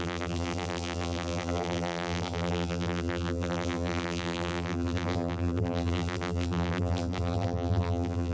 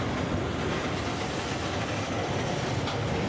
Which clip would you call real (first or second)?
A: second